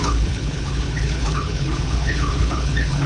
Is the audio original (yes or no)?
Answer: no